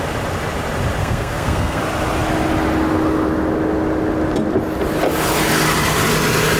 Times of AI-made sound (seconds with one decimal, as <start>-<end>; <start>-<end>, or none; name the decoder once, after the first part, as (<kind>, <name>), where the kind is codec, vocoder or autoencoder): 1.0-1.8 (codec, SNAC)